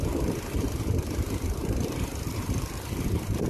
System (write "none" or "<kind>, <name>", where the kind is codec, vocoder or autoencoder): vocoder, BigVGAN v2